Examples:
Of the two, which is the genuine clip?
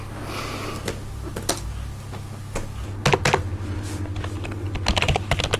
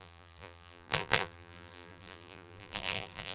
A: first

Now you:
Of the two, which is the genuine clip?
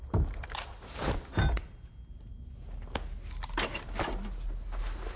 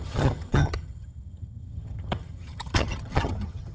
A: first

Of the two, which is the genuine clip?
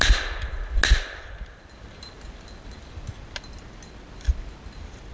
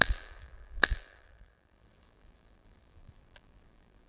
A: first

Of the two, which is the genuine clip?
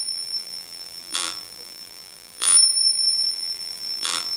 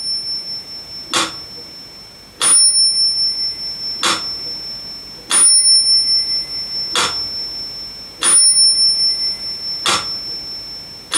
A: second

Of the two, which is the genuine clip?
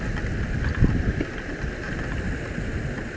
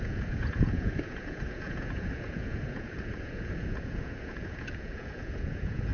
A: first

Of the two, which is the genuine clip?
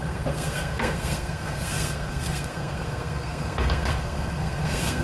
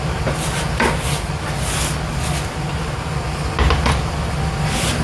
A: second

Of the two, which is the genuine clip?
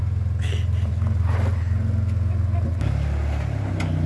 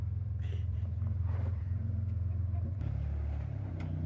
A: first